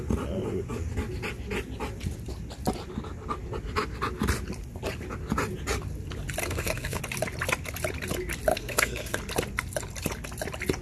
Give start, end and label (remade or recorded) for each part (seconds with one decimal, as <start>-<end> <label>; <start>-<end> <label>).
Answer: 0.0-6.4 recorded; 6.4-7.0 remade; 7.0-8.5 recorded; 8.5-9.2 remade; 9.2-10.8 recorded